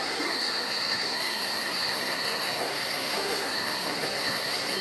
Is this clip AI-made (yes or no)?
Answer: yes